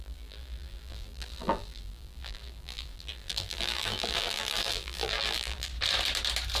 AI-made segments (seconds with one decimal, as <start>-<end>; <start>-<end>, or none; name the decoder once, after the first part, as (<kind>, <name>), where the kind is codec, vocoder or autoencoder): 0.0-5.7 (vocoder, BigVGAN v2)